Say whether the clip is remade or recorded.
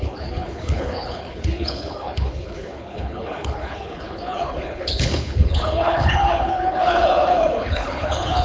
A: remade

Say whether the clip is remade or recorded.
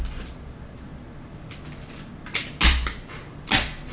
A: recorded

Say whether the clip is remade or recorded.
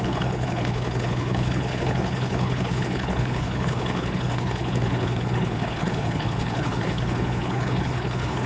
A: remade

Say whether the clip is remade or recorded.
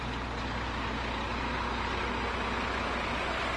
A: recorded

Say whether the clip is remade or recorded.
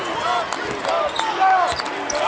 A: recorded